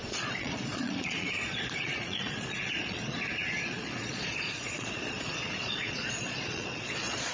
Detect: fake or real fake